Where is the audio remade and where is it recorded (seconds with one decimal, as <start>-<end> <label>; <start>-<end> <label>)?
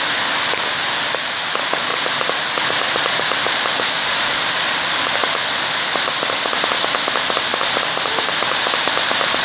0.0-1.9 recorded; 1.9-6.6 remade; 6.6-7.5 recorded; 7.5-8.7 remade; 8.7-9.4 recorded